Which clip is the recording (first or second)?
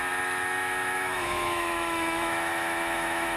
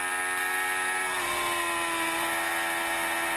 second